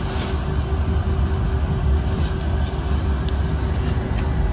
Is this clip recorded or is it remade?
recorded